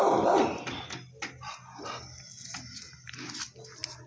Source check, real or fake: real